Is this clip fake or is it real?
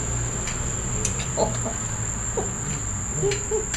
real